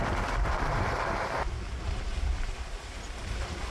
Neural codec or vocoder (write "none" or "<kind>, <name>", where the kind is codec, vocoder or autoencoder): none